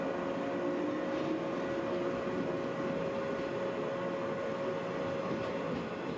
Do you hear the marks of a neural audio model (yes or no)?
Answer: no